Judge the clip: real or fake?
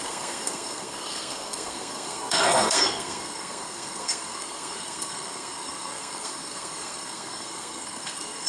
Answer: fake